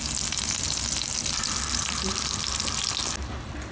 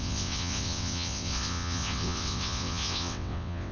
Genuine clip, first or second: first